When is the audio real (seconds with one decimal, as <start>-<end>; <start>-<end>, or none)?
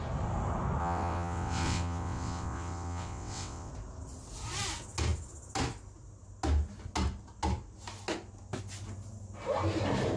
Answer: 0.0-0.8; 3.7-10.2